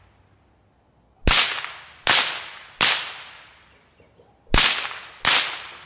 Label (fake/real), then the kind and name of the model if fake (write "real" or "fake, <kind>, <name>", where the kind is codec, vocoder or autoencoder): real